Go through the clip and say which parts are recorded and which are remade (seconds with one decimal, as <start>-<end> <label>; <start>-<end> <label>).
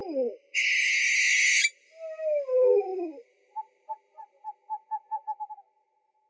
0.0-6.3 recorded